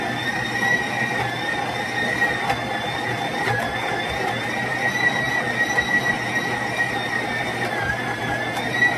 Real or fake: real